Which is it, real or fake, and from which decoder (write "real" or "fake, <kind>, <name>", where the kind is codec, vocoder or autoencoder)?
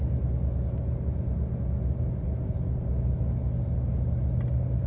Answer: real